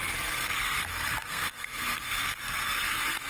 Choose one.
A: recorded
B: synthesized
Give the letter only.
B